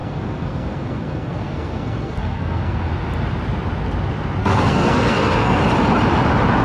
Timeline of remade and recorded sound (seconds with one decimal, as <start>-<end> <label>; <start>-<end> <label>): 0.0-2.9 remade; 2.9-4.4 recorded; 4.4-5.6 remade; 5.6-6.6 recorded